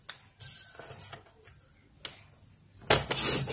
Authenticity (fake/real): real